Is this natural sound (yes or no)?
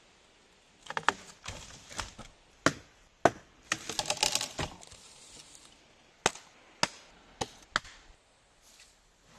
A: yes